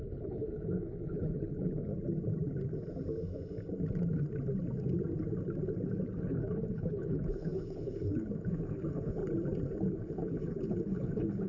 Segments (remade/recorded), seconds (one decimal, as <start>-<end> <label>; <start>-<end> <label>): 0.0-1.9 remade; 1.9-6.2 recorded; 6.2-9.2 remade; 9.2-9.8 recorded; 9.8-11.5 remade